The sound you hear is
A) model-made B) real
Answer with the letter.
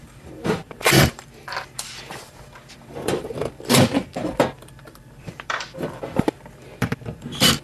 A